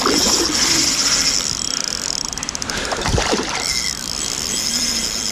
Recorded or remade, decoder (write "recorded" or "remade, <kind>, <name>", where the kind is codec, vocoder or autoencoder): remade, vocoder, BigVGAN v2